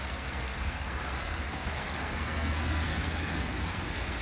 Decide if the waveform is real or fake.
fake